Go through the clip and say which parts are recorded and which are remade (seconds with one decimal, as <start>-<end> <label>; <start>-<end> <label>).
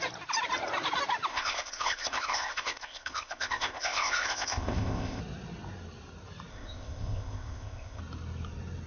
0.0-1.3 recorded; 1.3-5.2 remade; 5.2-6.5 recorded; 6.5-8.0 remade; 8.0-8.9 recorded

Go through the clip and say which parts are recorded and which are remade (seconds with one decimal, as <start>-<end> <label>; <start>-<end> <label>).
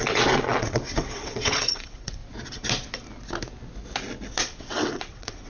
0.0-2.2 remade; 2.2-4.6 recorded; 4.6-5.5 remade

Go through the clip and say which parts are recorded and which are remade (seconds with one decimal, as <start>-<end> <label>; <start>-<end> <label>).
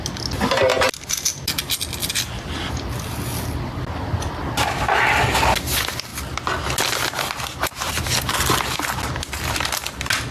0.0-4.4 recorded; 4.4-5.0 remade; 5.0-10.3 recorded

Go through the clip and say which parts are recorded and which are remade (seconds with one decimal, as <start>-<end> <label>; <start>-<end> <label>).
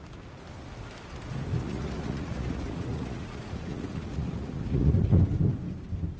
0.0-1.5 recorded; 1.5-5.2 remade; 5.2-6.2 recorded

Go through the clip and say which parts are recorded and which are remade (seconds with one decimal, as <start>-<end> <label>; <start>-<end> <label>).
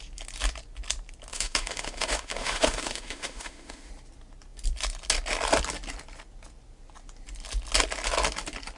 0.0-1.3 recorded; 1.3-3.9 remade; 3.9-8.8 recorded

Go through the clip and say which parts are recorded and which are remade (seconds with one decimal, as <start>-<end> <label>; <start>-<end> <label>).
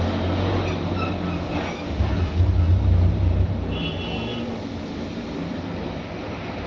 0.0-5.4 recorded; 5.4-6.7 remade